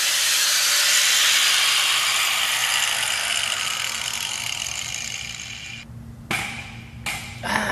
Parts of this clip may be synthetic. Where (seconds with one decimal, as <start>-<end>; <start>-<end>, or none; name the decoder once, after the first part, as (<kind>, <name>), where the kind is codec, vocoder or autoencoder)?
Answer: none